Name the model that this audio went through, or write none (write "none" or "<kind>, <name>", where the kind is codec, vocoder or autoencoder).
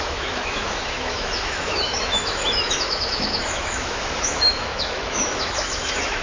autoencoder, DAC-VAE